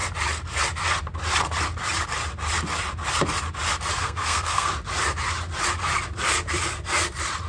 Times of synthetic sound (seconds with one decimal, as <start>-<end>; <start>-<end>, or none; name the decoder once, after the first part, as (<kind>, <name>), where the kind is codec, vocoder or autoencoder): 4.0-4.7 (codec, SNAC)